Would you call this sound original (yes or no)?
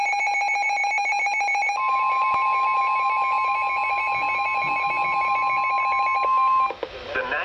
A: yes